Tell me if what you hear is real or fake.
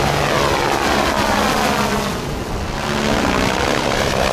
real